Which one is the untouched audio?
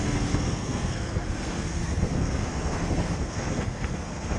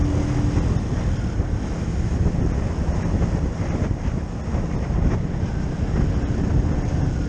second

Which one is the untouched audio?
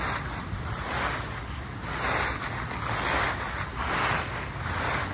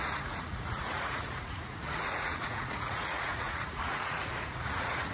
first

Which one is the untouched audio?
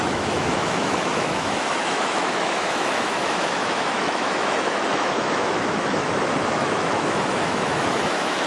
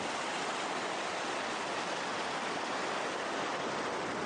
second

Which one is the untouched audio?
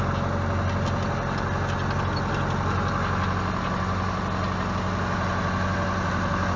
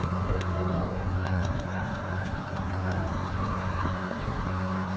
first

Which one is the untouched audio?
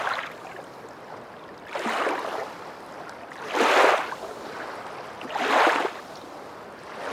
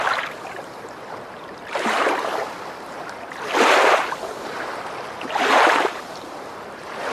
first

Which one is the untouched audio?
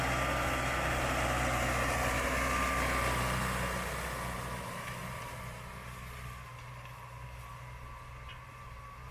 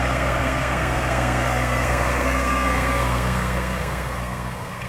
first